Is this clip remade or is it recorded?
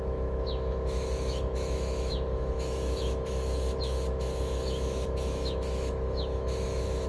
remade